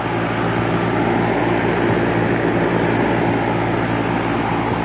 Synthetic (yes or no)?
no